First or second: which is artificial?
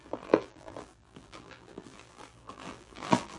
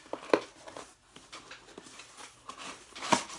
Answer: first